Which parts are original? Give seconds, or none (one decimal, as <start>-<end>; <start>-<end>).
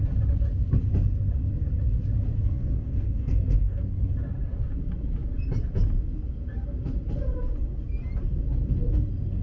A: 0.0-2.4; 4.1-9.4